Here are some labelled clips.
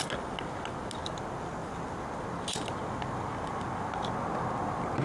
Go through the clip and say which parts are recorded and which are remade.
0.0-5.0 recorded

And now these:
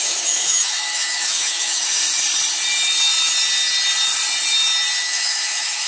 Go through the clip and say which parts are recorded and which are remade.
0.0-2.0 remade; 2.0-5.0 recorded; 5.0-5.9 remade

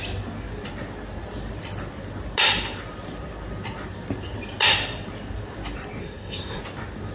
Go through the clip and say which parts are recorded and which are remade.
0.0-6.0 recorded; 6.0-6.6 remade; 6.6-7.1 recorded

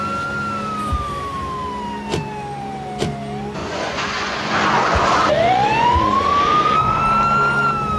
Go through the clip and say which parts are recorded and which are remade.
0.0-3.6 recorded; 3.6-7.0 remade; 7.0-8.0 recorded

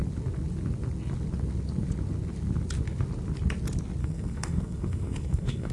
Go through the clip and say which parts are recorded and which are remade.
0.0-4.0 recorded; 4.0-5.7 remade

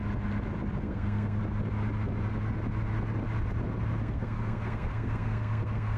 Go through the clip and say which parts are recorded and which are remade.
0.0-0.8 recorded; 0.8-1.4 remade; 1.4-4.0 recorded; 4.0-6.0 remade